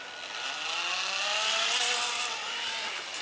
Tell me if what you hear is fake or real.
real